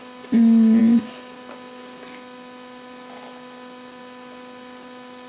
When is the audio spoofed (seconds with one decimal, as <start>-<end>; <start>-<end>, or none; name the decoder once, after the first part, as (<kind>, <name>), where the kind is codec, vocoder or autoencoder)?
none

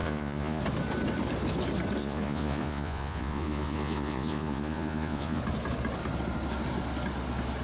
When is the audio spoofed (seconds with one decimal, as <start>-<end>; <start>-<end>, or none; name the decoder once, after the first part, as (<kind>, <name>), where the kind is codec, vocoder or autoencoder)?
0.0-0.6 (vocoder, Vocos); 2.0-5.4

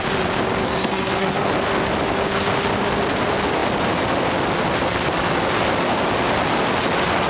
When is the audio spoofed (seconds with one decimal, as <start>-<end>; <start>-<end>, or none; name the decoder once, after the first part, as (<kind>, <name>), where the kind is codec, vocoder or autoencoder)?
0.6-1.5 (codec, SNAC)

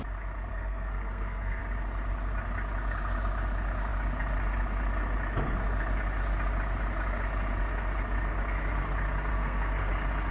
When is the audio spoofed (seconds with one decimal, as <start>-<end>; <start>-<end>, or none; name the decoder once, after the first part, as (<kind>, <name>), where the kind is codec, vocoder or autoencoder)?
0.5-1.6 (codec, SNAC); 9.3-9.9

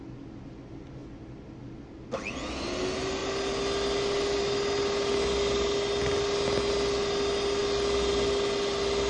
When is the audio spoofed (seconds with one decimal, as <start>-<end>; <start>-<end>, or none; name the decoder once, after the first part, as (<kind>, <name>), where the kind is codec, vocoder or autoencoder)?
none

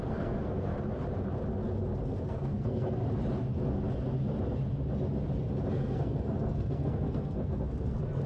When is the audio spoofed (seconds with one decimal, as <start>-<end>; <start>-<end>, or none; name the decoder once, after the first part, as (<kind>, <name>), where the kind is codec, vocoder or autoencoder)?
0.0-0.7 (codec, SNAC); 2.2-3.0; 5.7-8.3

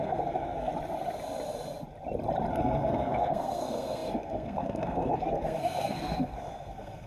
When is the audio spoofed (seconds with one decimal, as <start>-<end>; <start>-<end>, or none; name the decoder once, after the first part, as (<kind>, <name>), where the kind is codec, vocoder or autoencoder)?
0.0-0.7 (codec, SNAC); 2.5-7.1